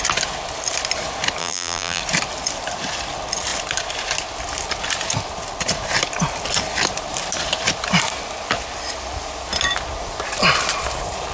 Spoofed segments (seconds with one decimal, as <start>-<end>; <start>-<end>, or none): 1.4-2.0